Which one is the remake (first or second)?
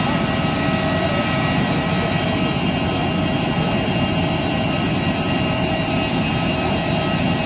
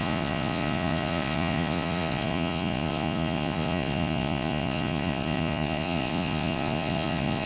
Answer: second